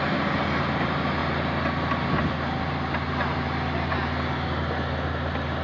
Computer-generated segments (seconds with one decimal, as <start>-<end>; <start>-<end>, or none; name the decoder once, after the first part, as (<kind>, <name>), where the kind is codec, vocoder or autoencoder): none